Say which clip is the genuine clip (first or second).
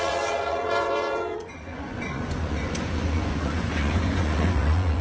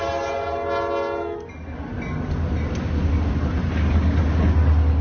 second